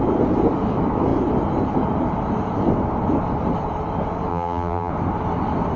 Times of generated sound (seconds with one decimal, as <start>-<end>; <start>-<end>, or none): 4.3-4.9